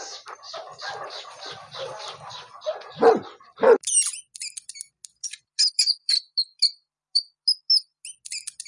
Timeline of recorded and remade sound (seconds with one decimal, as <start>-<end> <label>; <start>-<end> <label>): 0.0-8.7 recorded